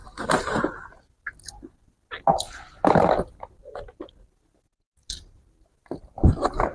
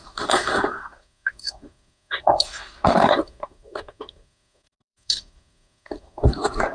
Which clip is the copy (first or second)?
second